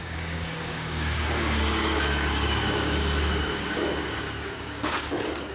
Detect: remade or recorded remade